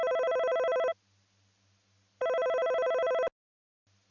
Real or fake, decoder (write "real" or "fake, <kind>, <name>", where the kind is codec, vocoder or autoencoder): real